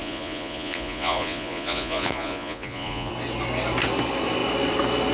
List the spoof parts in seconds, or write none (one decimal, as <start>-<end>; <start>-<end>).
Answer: 0.0-3.1